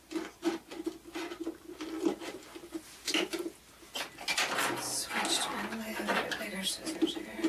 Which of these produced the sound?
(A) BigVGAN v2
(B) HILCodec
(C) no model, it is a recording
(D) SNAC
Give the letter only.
C